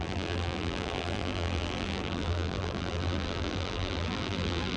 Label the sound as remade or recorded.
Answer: remade